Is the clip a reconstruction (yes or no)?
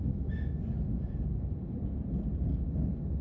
no